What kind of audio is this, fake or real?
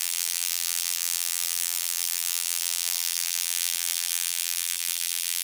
fake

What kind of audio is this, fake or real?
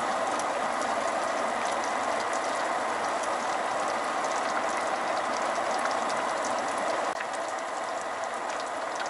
real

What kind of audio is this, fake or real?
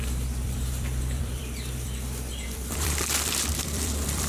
fake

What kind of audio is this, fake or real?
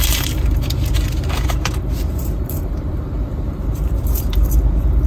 fake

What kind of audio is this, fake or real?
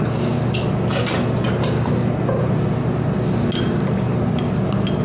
real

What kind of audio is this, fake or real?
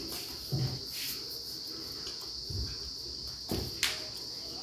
real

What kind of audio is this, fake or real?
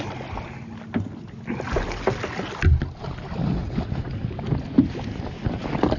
real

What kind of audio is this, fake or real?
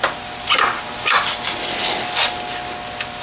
real